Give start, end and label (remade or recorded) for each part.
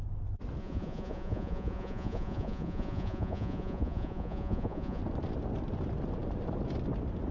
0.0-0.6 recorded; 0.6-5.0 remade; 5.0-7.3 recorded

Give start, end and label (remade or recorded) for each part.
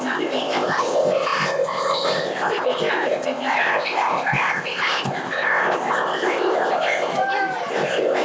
0.0-7.1 remade; 7.1-7.7 recorded; 7.7-8.2 remade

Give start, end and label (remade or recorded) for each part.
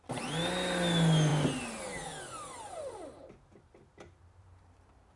0.0-5.2 recorded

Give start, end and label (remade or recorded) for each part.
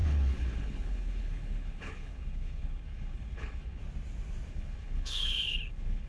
0.0-3.8 remade; 3.8-4.5 recorded; 4.5-6.1 remade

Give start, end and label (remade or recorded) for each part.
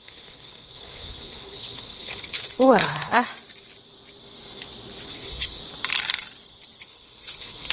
0.0-3.3 remade; 3.3-5.1 recorded; 5.1-5.6 remade; 5.6-6.8 recorded; 6.8-7.7 remade